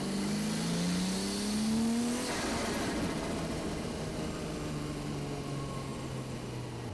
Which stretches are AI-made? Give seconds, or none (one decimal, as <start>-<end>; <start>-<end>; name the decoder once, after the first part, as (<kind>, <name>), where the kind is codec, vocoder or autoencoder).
none